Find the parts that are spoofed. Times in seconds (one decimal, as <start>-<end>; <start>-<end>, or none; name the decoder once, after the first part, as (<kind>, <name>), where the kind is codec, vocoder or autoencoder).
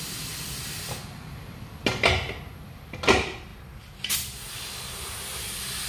none